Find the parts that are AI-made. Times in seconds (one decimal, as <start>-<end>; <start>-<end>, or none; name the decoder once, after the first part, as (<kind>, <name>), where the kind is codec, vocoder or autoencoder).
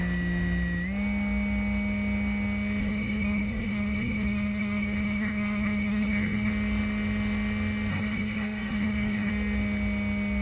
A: 2.8-6.5 (codec, SNAC); 7.9-9.3